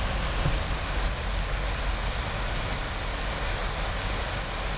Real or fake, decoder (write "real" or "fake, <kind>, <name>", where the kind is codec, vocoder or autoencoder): real